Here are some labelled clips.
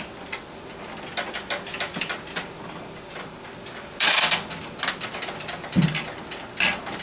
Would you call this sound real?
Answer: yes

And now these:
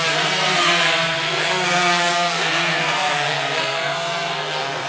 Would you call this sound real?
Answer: no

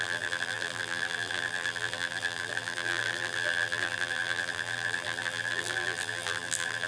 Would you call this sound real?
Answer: no